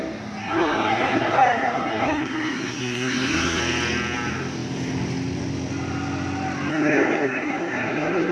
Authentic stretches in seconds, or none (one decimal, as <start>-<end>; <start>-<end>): 0.0-0.4; 3.6-6.7